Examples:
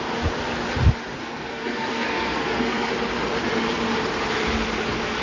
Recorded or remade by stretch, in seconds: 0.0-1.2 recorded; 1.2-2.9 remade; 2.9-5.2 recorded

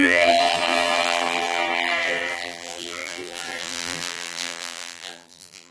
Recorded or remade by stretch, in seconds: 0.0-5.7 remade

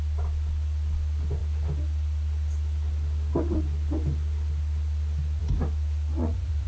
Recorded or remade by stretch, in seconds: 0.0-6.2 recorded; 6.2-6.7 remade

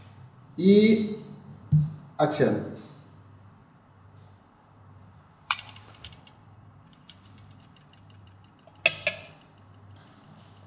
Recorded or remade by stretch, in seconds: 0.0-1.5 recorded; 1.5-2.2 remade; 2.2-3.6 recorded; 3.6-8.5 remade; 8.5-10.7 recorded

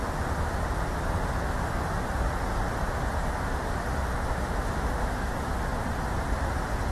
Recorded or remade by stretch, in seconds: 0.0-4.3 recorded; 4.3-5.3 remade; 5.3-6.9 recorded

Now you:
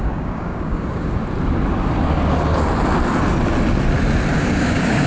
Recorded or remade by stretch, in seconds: 0.0-1.2 remade; 1.2-4.3 recorded; 4.3-5.1 remade

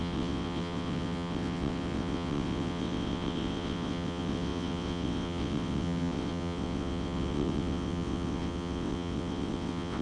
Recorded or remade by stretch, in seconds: 0.0-10.0 remade

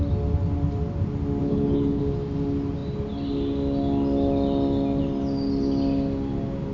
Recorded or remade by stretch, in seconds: 0.0-1.4 recorded; 1.4-2.0 remade; 2.0-6.7 recorded